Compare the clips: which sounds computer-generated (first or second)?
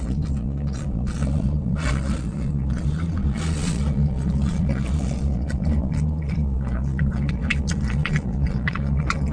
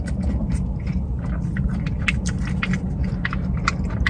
first